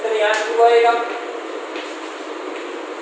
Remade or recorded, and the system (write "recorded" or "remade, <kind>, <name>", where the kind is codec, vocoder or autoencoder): recorded